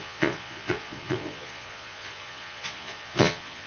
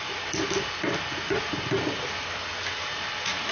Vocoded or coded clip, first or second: first